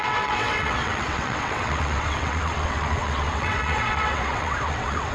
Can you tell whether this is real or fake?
fake